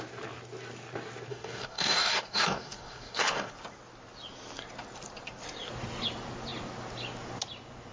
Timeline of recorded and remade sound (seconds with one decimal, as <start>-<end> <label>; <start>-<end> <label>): 0.0-1.3 recorded; 1.3-3.5 remade; 3.5-7.9 recorded